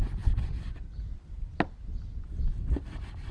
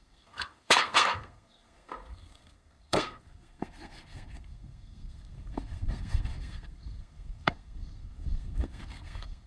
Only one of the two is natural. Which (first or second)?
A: first